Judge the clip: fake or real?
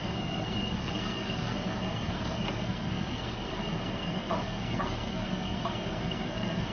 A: fake